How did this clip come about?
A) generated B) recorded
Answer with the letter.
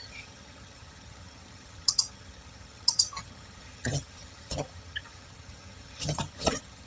A